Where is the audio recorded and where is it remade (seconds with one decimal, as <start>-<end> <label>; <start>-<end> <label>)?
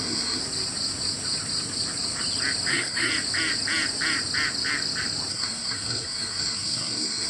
0.0-0.4 remade; 0.4-2.7 recorded; 2.7-3.1 remade; 3.1-5.3 recorded; 5.3-7.3 remade